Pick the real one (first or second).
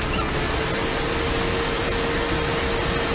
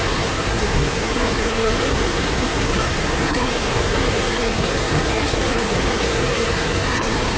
first